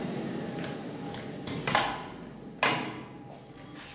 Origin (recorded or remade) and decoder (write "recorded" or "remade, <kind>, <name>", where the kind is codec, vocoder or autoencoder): recorded